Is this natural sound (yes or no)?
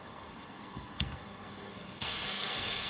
no